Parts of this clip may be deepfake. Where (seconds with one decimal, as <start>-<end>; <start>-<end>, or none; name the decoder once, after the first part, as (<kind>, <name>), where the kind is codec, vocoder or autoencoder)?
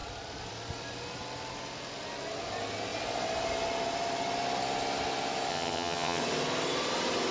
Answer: 5.5-6.2 (vocoder, HiFi-GAN)